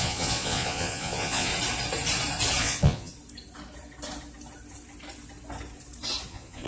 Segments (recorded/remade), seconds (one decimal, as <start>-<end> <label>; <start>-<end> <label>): 0.0-1.5 remade; 1.5-2.6 recorded; 2.6-3.1 remade; 3.1-6.3 recorded; 6.3-6.7 remade